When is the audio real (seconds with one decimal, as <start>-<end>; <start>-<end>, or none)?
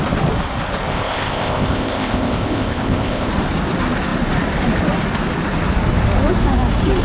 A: 0.0-0.9; 3.3-7.0